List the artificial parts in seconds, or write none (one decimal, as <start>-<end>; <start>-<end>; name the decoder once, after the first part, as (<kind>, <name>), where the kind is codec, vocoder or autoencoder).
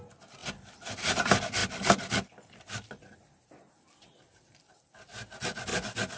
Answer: 0.4-1.2 (vocoder, BigVGAN v2); 1.6-3.7